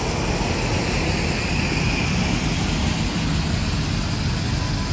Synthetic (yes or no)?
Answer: no